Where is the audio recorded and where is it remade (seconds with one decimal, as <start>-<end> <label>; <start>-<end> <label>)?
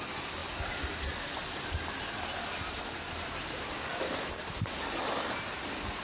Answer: 0.0-6.0 recorded